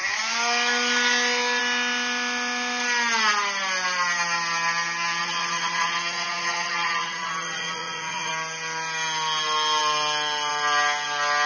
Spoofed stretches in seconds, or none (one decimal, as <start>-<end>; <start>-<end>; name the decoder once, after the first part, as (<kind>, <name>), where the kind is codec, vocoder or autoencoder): 5.2-8.3 (vocoder, Vocos)